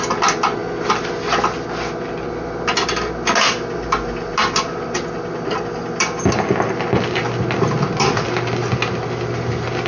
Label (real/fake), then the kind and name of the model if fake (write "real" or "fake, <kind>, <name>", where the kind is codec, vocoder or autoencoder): real